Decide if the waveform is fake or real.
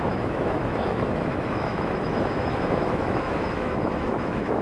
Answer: fake